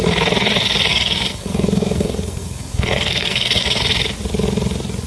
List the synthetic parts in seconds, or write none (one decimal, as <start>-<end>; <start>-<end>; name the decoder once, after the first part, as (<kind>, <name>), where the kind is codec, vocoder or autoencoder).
0.9-3.8 (codec, SNAC)